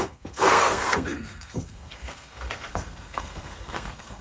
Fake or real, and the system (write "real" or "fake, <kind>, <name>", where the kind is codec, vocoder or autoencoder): fake, codec, SNAC